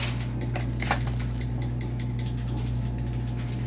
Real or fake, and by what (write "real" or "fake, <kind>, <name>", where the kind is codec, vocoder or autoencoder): real